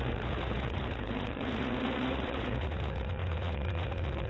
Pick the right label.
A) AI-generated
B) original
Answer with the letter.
A